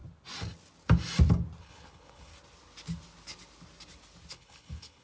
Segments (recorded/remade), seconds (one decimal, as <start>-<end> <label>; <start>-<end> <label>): 0.0-1.6 recorded; 1.6-2.3 remade; 2.3-4.3 recorded; 4.3-5.0 remade